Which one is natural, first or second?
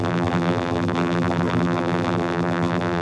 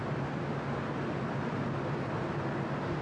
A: second